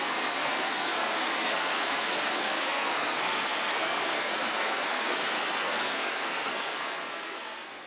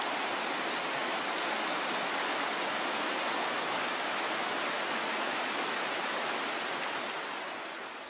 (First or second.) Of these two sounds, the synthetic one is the first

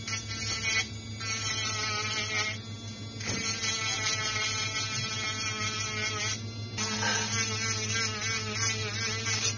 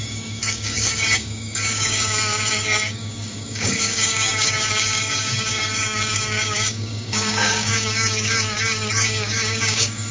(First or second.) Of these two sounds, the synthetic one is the second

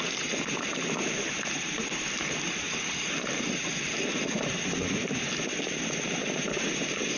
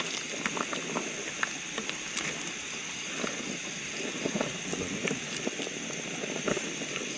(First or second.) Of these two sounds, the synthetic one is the first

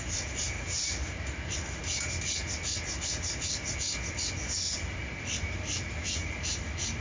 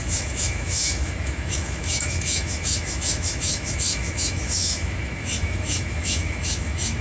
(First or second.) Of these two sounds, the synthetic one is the second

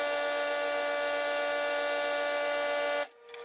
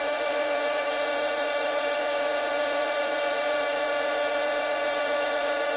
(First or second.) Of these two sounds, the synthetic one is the second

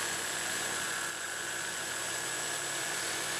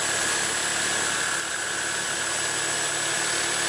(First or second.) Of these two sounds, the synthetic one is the first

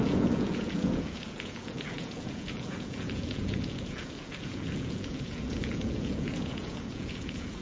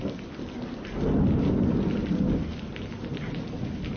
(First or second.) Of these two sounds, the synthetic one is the first